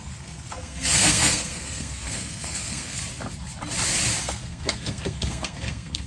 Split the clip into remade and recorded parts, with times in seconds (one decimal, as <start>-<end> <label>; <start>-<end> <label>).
0.0-3.0 remade; 3.0-4.2 recorded; 4.2-6.1 remade